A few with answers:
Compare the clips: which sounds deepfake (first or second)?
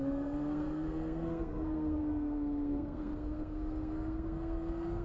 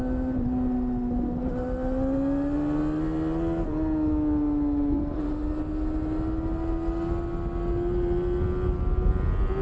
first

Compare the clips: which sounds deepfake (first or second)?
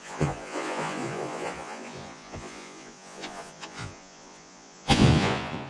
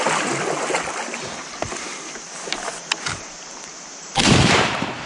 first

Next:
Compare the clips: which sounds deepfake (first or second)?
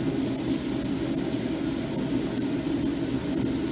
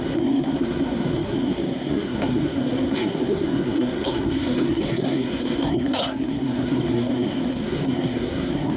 second